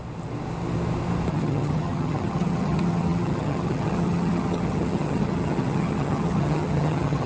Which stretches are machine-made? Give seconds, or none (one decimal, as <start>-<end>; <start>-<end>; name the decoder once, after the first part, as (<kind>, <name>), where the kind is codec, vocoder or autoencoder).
1.3-7.3 (vocoder, HiFi-GAN)